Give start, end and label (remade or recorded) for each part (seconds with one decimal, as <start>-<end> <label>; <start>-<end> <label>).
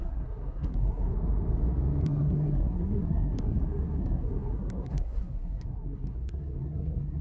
0.0-1.1 remade; 1.1-2.0 recorded; 2.0-7.2 remade